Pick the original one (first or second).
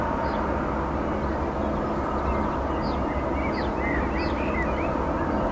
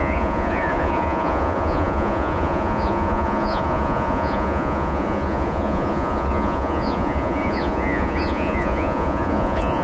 first